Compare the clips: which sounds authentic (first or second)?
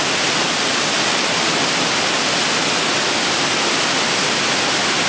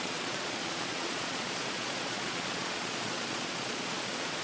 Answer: first